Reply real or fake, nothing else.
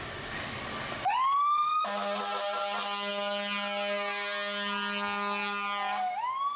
real